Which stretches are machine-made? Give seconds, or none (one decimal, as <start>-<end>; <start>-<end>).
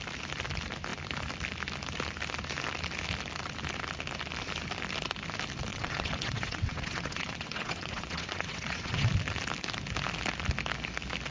5.7-9.1